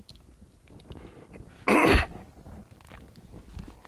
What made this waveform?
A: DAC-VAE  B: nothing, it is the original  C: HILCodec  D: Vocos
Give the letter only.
B